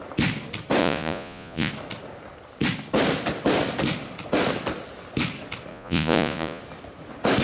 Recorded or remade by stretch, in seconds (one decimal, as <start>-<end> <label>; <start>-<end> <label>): 0.0-0.8 recorded; 0.8-1.7 remade; 1.7-5.7 recorded; 5.7-6.6 remade; 6.6-7.4 recorded

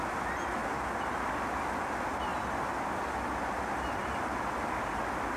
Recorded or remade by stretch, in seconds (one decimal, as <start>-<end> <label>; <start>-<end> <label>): 0.0-5.4 recorded

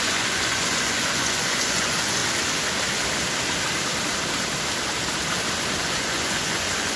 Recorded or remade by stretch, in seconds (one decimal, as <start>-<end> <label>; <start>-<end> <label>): 0.0-2.2 remade; 2.2-5.8 recorded; 5.8-7.0 remade